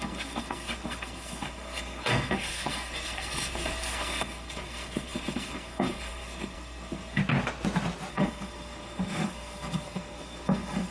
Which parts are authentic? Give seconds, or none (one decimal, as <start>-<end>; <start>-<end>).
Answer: 7.2-8.1